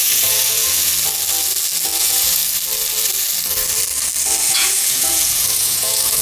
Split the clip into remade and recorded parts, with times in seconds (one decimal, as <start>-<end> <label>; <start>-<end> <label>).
0.0-0.9 remade; 0.9-2.0 recorded; 2.0-2.4 remade; 2.4-4.4 recorded; 4.4-6.2 remade